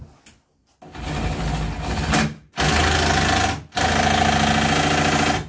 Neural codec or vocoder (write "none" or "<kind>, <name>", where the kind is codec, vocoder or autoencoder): none